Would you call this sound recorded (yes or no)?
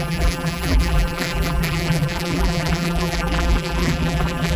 no